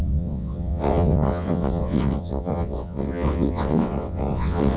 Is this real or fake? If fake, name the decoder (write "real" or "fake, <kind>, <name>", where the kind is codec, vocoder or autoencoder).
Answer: fake, vocoder, WaveNeXt